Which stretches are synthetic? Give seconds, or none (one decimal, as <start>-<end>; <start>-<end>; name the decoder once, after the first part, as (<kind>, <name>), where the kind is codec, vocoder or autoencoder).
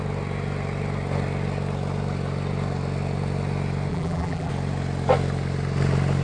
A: 3.9-4.5 (vocoder, BigVGAN v2)